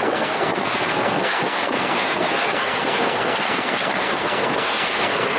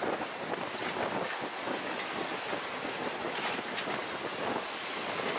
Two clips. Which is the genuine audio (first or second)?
second